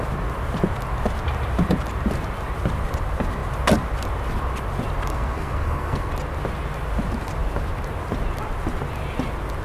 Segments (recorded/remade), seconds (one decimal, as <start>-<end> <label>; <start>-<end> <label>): 0.0-5.1 recorded; 5.1-6.1 remade; 6.1-9.6 recorded